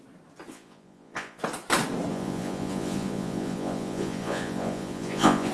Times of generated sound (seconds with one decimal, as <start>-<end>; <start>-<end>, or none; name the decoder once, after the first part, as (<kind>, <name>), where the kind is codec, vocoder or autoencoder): 0.5-1.4 (vocoder, Vocos); 2.1-5.5